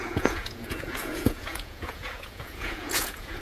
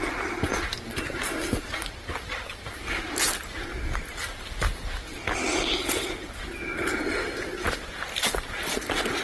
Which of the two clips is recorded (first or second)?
second